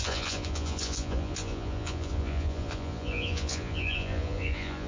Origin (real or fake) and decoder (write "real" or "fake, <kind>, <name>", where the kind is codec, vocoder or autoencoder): fake, vocoder, Vocos